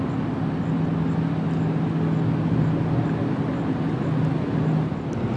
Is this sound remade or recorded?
recorded